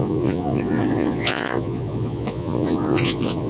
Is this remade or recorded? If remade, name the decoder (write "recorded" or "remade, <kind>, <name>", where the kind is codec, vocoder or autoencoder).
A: remade, vocoder, Vocos